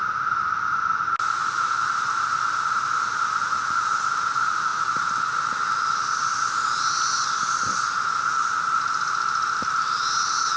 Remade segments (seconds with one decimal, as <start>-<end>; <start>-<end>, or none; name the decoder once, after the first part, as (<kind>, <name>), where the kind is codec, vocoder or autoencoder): none